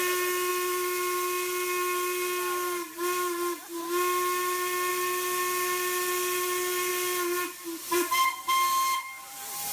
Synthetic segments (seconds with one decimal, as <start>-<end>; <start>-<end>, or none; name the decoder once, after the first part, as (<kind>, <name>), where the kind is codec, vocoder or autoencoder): none